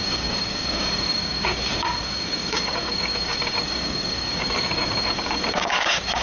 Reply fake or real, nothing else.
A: fake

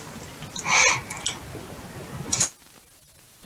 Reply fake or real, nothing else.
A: real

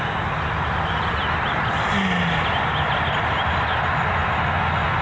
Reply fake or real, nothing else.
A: real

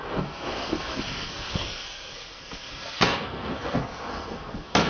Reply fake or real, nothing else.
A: fake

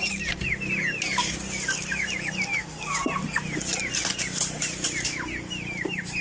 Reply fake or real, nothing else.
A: real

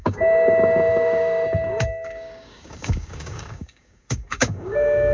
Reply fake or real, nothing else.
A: fake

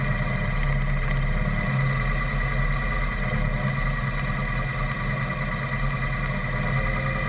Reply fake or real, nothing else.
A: real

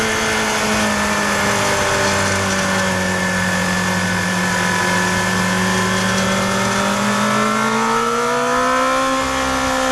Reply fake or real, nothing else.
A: real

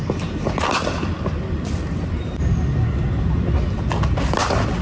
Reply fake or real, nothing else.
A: real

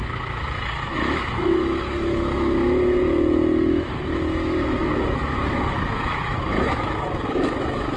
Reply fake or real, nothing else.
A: fake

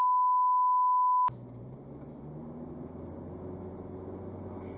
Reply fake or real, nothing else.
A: real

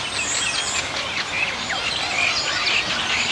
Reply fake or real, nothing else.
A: real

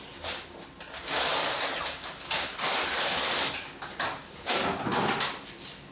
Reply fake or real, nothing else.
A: real